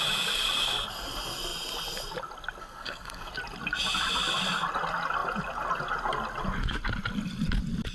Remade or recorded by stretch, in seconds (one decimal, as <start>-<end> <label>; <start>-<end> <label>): 0.0-2.6 recorded; 2.6-3.3 remade; 3.3-7.9 recorded